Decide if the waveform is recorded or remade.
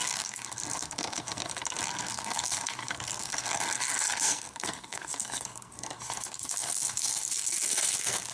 remade